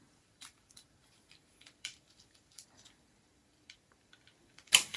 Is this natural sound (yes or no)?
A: no